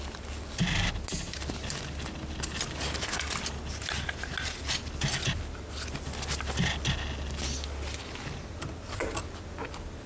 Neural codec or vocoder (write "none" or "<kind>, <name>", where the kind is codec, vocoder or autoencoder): none